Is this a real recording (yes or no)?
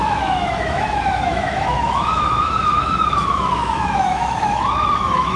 no